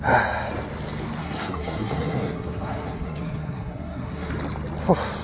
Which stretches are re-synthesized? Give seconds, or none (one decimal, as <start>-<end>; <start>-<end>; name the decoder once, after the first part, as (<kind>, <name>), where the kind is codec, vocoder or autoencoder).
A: 1.2-4.3 (codec, SNAC)